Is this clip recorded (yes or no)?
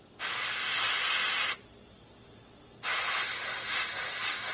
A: yes